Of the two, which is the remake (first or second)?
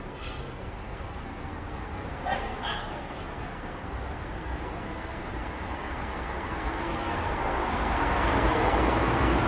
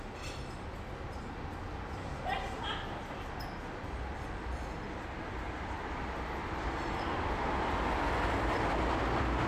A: first